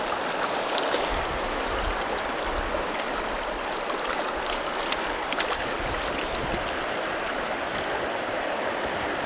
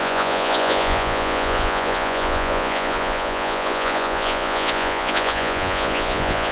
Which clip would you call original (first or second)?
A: first